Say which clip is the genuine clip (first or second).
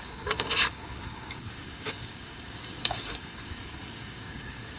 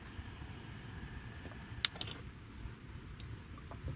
second